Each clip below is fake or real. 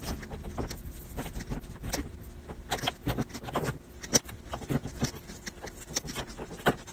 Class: real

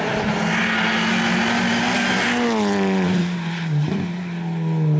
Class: real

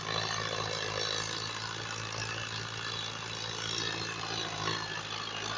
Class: real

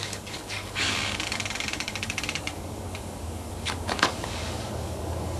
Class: fake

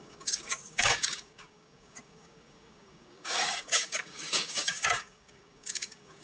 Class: fake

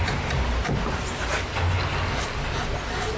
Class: real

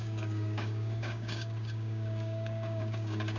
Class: fake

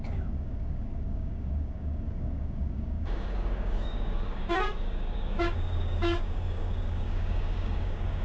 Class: fake